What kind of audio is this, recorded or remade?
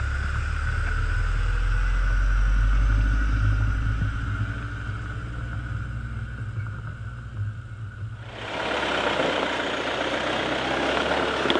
recorded